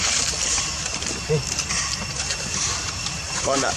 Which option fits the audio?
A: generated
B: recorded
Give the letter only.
A